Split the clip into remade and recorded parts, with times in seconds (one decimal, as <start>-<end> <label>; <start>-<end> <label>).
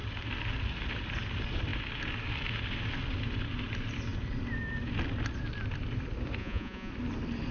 0.0-6.4 recorded; 6.4-6.9 remade; 6.9-7.5 recorded